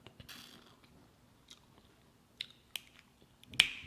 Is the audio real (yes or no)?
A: yes